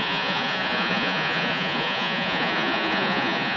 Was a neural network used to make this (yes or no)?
yes